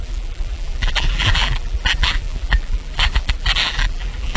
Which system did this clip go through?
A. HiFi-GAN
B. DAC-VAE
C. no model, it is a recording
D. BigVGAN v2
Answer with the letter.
D